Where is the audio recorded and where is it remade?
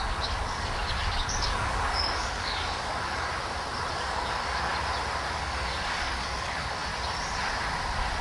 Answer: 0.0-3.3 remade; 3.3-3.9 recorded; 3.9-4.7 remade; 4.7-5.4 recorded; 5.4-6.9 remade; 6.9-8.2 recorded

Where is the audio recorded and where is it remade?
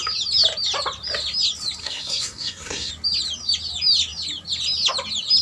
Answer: 0.0-1.8 recorded; 1.8-2.9 remade; 2.9-5.4 recorded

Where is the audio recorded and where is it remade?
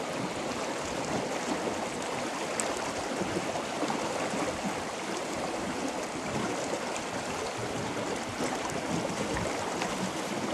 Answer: 0.0-10.5 recorded